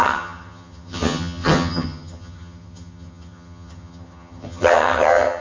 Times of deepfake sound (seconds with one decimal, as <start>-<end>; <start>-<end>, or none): 0.0-5.4